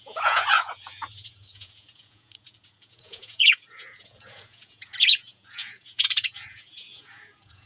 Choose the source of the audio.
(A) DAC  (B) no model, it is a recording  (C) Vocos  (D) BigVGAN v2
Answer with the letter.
C